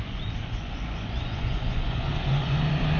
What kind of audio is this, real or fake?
fake